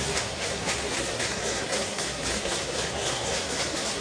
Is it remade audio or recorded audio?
remade